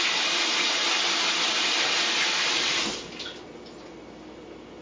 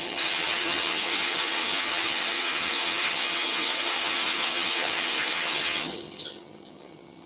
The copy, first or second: second